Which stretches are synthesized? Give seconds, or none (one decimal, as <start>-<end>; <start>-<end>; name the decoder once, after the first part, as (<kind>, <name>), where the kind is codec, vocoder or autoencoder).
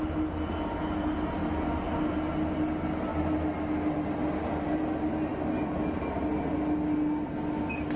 none